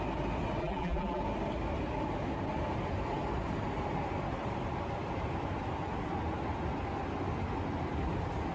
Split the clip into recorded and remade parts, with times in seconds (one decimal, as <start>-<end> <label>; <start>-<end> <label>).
0.0-0.6 recorded; 0.6-1.2 remade; 1.2-8.5 recorded